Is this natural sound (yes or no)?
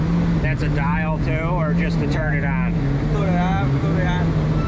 yes